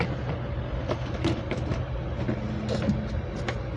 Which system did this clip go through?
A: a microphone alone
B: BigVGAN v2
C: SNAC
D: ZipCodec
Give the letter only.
A